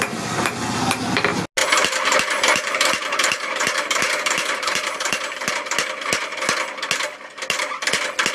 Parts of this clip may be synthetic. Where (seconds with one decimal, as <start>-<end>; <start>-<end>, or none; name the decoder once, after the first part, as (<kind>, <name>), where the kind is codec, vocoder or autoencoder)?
1.6-5.5 (vocoder, BigVGAN v2)